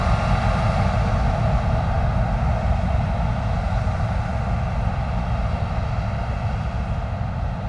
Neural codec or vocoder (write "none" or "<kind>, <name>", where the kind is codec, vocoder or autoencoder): none